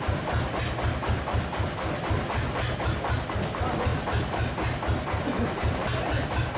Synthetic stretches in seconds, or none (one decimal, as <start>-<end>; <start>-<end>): none